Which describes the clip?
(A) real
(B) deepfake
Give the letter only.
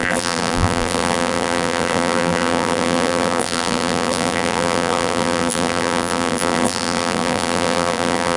B